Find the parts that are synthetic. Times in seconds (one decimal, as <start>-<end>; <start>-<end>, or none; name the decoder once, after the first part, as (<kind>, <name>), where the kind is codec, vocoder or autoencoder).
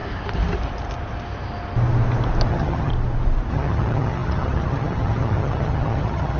2.5-2.9 (vocoder, HiFi-GAN); 3.5-6.4